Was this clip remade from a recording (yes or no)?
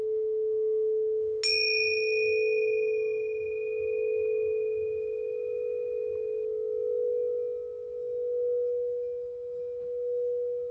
no